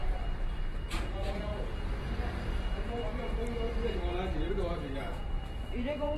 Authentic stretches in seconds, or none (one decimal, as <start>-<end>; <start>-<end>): 0.0-0.6; 1.5-4.5